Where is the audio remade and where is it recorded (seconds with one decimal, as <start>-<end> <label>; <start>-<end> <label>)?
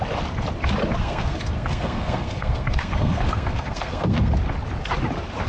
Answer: 0.0-1.0 recorded; 1.0-4.3 remade; 4.3-5.5 recorded